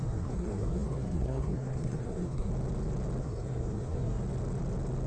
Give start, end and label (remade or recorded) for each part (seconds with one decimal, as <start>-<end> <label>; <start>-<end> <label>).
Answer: 0.0-2.5 remade; 2.5-3.2 recorded; 3.2-4.2 remade; 4.2-5.1 recorded